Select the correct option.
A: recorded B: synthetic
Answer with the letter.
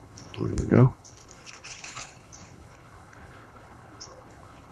B